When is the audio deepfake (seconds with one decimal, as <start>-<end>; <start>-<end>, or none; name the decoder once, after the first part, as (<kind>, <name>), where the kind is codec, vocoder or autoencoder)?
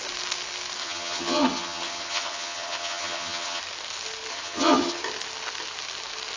0.8-3.6 (vocoder, HiFi-GAN); 4.3-5.0